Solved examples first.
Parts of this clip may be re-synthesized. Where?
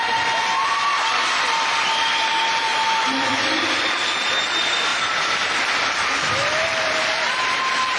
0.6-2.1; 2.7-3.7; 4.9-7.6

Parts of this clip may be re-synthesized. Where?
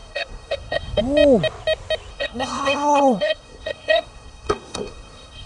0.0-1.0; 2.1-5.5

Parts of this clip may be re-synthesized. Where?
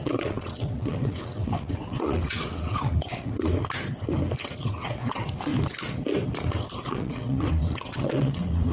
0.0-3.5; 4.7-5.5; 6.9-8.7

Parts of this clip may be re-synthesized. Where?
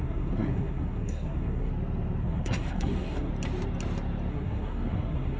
0.0-1.7; 2.2-3.3; 4.3-5.4